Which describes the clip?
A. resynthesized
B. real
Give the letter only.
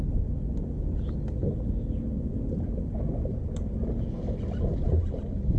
B